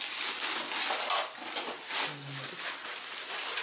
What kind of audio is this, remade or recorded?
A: recorded